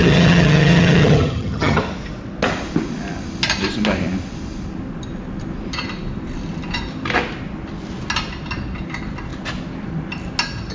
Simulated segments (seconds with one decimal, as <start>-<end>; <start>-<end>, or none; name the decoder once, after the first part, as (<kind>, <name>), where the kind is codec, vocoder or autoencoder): 0.0-1.8 (vocoder, HiFi-GAN)